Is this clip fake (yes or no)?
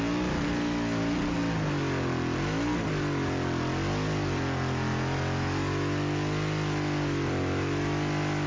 no